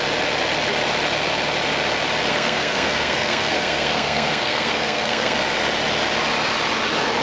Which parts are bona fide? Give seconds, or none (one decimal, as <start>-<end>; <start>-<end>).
0.0-2.3; 5.4-7.2